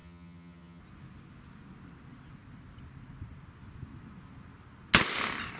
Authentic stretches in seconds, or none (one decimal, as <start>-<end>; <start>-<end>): 0.8-5.6